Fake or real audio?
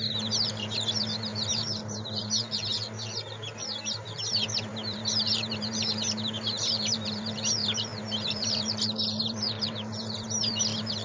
fake